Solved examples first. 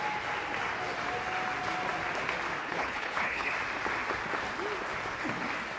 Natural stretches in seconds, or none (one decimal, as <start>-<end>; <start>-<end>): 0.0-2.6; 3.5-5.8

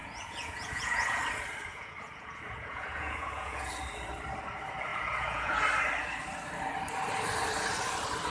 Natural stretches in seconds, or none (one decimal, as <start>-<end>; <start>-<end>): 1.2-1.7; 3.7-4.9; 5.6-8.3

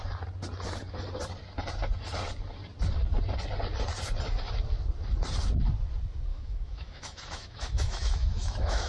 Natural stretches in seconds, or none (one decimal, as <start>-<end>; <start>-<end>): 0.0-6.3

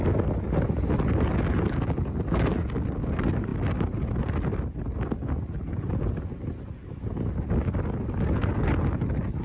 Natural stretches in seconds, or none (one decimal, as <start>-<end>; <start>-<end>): 0.0-9.4